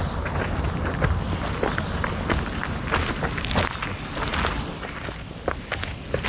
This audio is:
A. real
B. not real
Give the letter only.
A